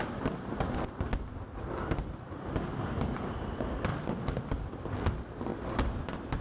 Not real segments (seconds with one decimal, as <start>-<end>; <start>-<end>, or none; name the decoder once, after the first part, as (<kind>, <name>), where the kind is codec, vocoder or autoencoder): none